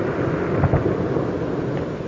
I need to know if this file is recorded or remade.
recorded